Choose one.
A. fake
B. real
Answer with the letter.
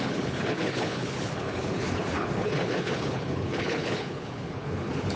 A